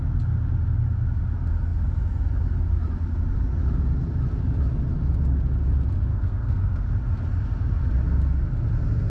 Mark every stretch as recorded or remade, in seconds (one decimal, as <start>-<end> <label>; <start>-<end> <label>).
0.0-6.1 recorded; 6.1-6.9 remade; 6.9-9.1 recorded

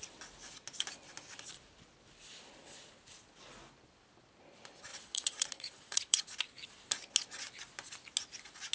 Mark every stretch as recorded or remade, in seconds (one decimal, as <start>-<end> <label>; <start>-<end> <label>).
0.0-4.9 recorded; 4.9-6.2 remade; 6.2-8.7 recorded

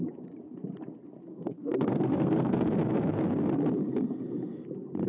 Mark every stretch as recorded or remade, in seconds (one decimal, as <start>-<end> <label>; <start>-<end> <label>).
0.0-1.3 recorded; 1.3-3.1 remade; 3.1-5.1 recorded

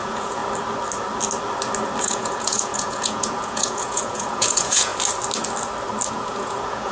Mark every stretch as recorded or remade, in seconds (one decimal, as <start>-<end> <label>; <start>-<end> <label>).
0.0-0.4 remade; 0.4-2.0 recorded; 2.0-4.9 remade; 4.9-6.1 recorded; 6.1-6.9 remade

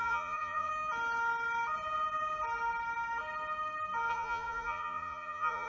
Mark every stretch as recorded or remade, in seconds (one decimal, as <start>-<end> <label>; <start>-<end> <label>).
0.0-0.7 remade; 0.7-4.1 recorded; 4.1-5.7 remade

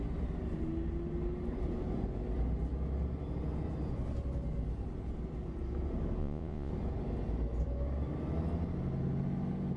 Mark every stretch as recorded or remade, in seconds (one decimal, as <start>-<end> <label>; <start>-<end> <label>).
0.0-6.2 recorded; 6.2-6.7 remade; 6.7-9.8 recorded

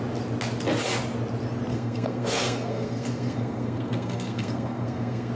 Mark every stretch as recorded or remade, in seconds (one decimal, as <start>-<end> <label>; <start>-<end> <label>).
0.0-1.7 recorded; 1.7-5.3 remade

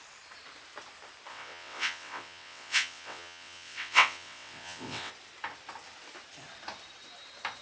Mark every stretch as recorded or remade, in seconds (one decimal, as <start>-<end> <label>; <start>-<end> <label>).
0.0-1.3 recorded; 1.3-5.1 remade; 5.1-7.6 recorded